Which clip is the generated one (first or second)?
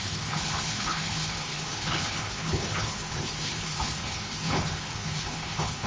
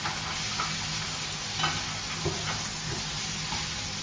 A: first